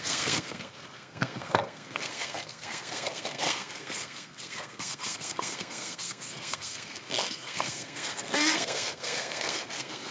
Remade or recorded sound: remade